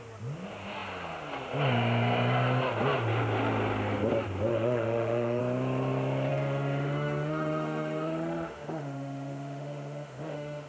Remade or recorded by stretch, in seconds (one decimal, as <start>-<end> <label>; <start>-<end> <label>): 0.0-4.5 recorded; 4.5-5.4 remade; 5.4-6.3 recorded; 6.3-10.7 remade